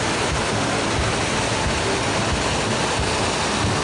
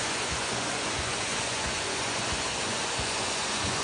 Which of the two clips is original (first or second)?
first